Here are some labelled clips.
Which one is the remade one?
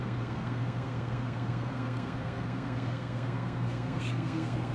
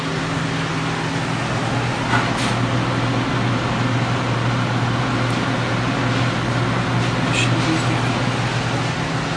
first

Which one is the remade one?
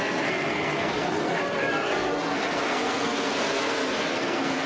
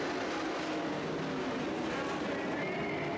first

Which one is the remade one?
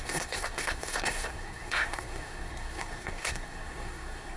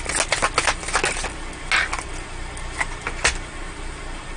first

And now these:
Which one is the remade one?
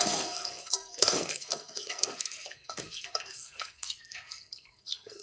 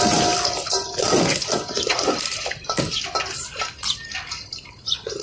first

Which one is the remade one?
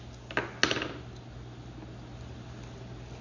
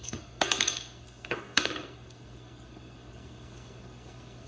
second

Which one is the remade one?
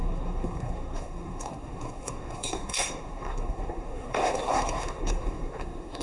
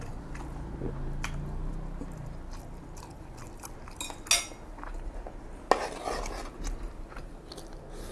first